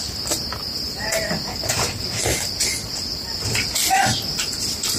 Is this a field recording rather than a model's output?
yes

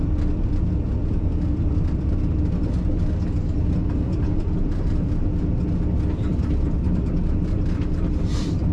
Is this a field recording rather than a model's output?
no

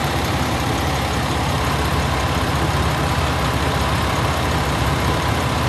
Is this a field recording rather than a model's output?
no